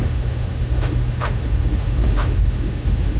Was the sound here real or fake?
fake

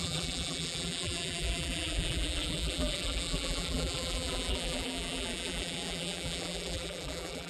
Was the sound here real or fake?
fake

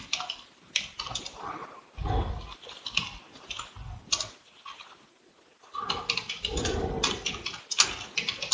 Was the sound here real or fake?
real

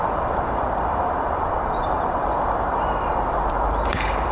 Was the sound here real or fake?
fake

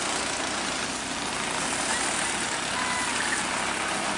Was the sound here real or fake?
real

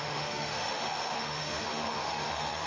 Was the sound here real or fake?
fake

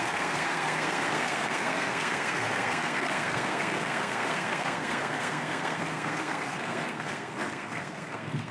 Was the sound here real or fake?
fake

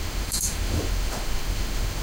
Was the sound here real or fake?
fake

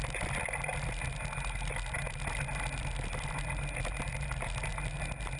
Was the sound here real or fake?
real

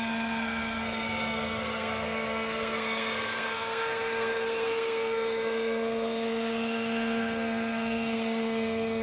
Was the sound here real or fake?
fake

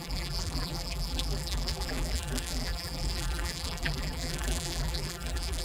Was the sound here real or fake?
fake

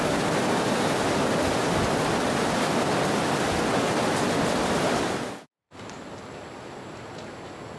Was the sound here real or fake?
real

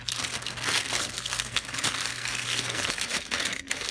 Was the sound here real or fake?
fake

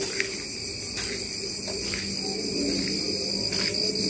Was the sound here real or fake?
real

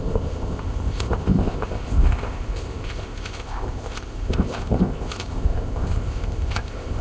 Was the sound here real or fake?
fake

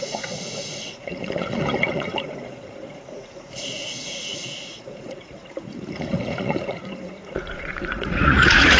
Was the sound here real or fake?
fake